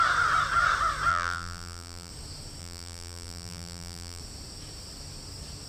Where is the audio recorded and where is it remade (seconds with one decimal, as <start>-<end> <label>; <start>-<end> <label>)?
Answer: 0.0-1.1 recorded; 1.1-2.1 remade; 2.1-2.6 recorded; 2.6-4.2 remade; 4.2-5.7 recorded